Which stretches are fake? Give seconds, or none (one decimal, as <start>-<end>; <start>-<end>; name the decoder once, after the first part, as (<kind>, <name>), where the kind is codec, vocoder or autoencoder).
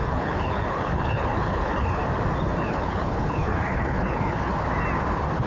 0.0-2.0 (codec, HILCodec); 2.6-4.5